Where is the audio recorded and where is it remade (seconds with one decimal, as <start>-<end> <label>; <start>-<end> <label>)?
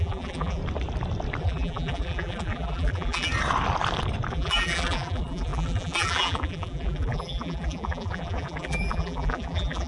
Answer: 0.0-0.6 remade; 0.6-1.4 recorded; 1.4-3.3 remade; 3.3-4.3 recorded; 4.3-9.9 remade